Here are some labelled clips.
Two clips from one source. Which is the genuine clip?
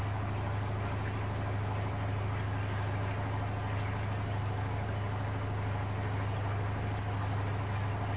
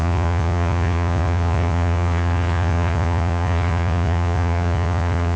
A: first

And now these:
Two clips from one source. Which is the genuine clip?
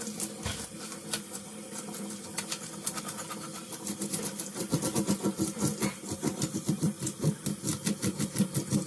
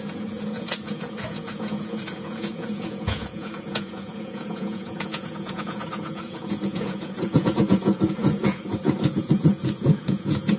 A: first